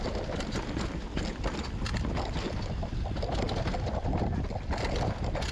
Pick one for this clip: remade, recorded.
recorded